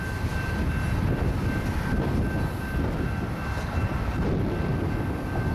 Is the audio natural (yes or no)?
yes